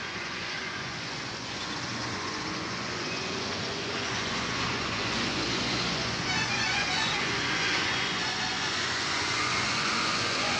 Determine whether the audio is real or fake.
fake